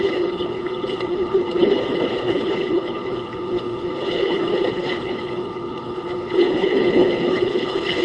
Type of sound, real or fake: fake